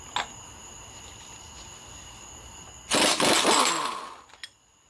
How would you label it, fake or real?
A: real